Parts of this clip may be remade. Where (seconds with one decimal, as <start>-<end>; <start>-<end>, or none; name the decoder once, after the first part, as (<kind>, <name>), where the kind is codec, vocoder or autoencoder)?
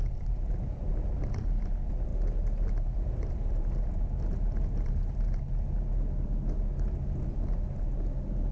2.1-4.9 (vocoder, BigVGAN v2)